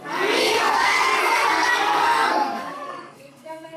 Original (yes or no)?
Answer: no